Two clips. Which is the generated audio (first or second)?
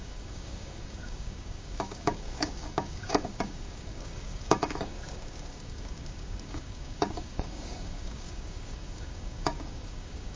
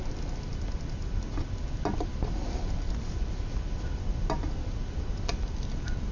first